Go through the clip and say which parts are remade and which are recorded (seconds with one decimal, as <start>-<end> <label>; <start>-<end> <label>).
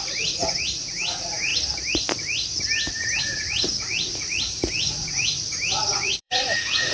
0.0-1.5 remade; 1.5-3.2 recorded; 3.2-5.3 remade; 5.3-5.9 recorded; 5.9-6.9 remade